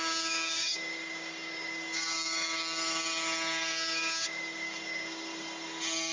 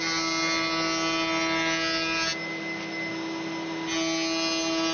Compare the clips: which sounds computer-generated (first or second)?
first